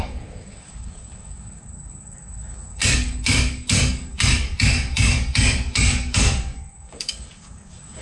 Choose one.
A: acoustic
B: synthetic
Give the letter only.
B